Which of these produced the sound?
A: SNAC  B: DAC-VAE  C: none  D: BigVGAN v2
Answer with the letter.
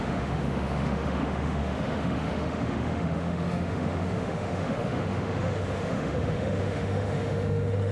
B